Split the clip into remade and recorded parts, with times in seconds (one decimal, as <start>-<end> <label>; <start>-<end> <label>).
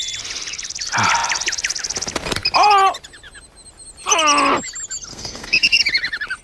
0.0-5.1 recorded; 5.1-5.8 remade; 5.8-6.4 recorded